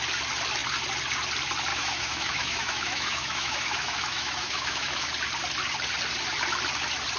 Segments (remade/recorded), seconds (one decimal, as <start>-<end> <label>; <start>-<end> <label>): 0.0-1.7 recorded; 1.7-5.1 remade; 5.1-7.2 recorded